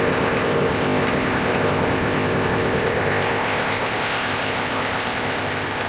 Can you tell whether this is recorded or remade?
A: remade